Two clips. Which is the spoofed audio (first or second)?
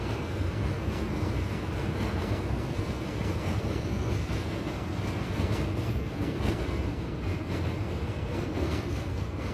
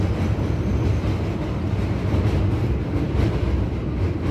first